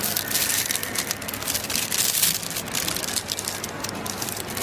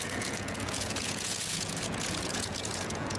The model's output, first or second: second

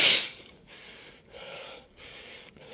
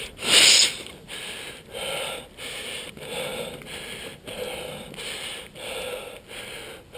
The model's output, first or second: first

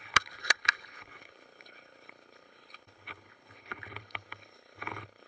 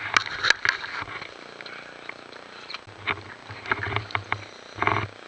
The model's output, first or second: first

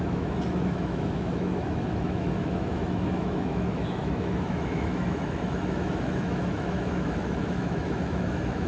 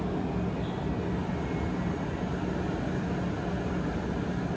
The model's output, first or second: first